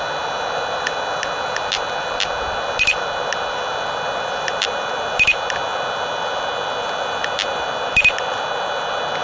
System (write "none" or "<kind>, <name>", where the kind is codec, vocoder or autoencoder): none